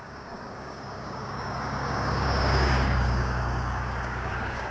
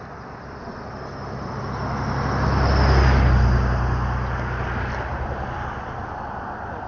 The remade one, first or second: first